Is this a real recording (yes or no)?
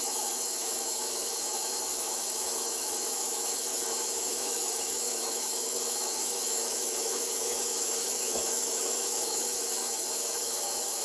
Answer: no